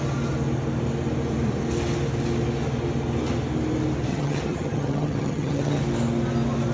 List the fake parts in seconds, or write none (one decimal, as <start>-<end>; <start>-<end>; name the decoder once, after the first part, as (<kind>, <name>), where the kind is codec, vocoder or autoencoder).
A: 4.1-5.8 (vocoder, HiFi-GAN)